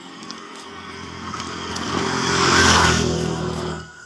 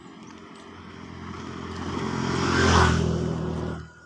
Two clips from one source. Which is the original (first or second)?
second